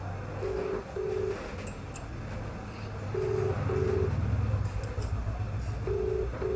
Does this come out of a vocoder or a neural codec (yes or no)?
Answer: no